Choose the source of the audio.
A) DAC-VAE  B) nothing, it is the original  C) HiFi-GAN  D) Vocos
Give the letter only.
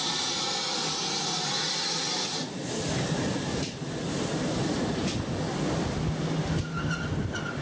B